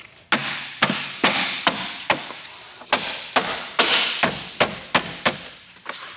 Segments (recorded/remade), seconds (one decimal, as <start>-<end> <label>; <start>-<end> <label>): 0.0-6.2 recorded